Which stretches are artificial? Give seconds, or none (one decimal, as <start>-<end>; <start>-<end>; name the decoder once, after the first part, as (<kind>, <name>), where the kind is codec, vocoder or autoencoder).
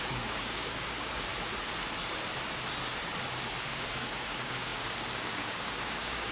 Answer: 0.0-1.3 (codec, DAC); 3.6-6.3